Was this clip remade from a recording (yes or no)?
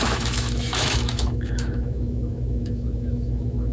yes